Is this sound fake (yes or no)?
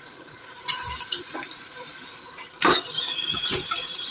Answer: yes